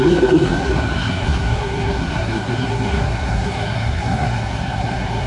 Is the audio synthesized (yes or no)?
yes